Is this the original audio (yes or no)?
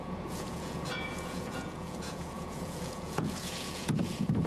no